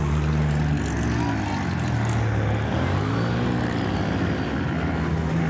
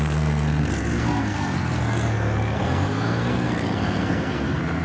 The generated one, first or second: second